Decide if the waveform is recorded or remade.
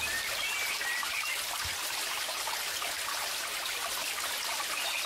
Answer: recorded